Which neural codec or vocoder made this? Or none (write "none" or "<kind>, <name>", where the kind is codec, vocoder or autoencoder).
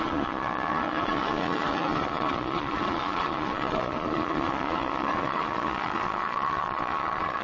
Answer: vocoder, Vocos